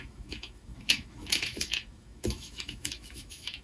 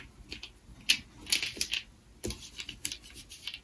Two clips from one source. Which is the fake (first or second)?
first